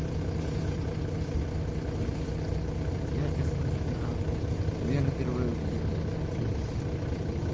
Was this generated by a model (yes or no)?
no